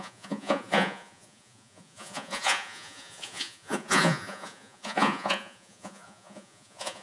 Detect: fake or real fake